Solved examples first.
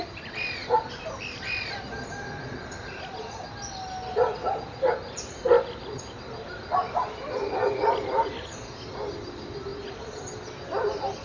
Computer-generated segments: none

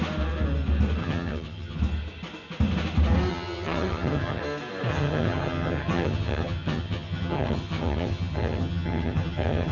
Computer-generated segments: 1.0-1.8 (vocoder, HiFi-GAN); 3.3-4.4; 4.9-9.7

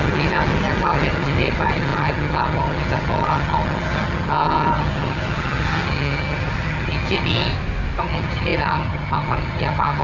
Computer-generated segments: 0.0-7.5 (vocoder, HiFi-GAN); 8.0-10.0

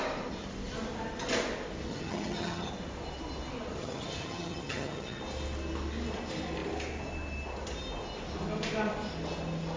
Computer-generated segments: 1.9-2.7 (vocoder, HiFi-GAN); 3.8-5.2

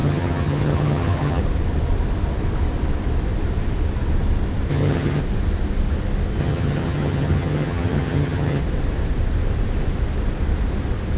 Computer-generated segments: 0.0-1.4 (vocoder, HiFi-GAN); 4.7-5.2; 6.4-8.6